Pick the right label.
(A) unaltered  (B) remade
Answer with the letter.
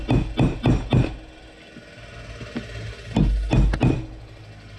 A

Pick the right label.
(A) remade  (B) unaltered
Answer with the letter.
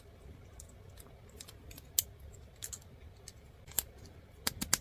B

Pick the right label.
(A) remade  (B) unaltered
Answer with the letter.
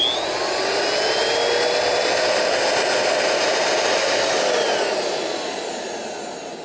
B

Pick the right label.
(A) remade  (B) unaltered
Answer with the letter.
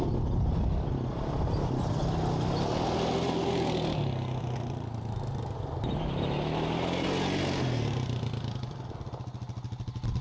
B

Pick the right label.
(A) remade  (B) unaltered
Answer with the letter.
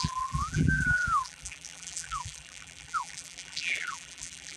A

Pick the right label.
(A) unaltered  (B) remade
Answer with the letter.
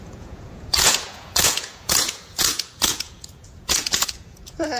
B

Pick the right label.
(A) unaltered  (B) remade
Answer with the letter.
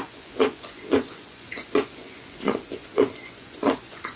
B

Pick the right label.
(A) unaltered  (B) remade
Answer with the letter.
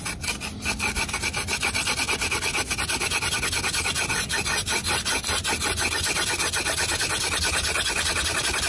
A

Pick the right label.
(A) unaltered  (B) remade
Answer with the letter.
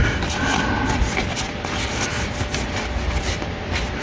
A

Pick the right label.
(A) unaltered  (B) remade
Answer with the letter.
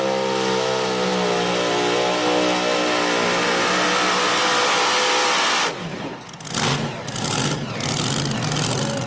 A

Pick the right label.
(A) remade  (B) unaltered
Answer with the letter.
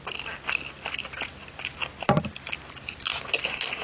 B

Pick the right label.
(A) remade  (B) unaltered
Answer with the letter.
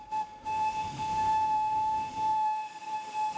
A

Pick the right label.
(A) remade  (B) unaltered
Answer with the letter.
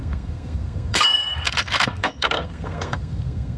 A